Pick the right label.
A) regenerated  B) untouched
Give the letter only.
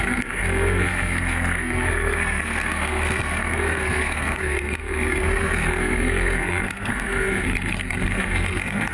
A